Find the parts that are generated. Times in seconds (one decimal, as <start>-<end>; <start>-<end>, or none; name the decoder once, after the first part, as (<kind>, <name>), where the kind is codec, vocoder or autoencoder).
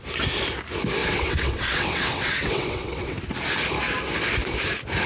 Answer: 1.0-3.2 (vocoder, WaveNeXt)